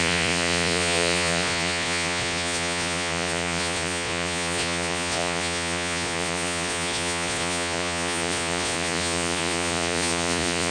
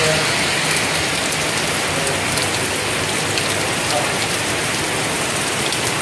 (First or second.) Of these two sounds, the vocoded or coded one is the first